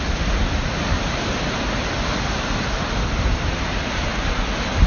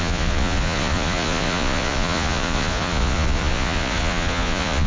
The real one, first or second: first